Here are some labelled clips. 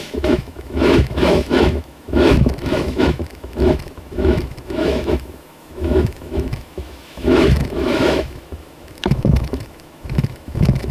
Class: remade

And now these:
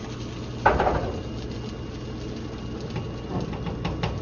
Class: recorded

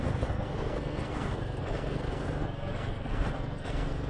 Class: remade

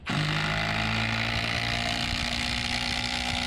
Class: recorded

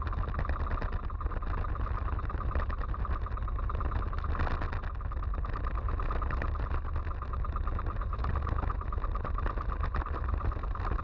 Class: recorded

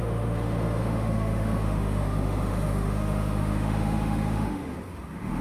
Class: remade